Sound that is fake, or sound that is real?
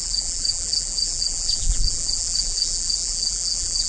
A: fake